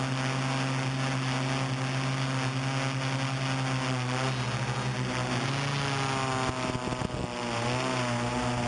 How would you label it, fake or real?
real